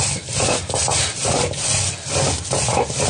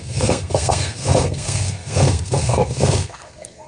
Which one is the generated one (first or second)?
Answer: second